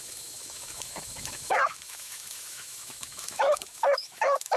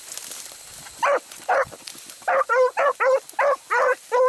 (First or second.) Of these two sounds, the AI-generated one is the first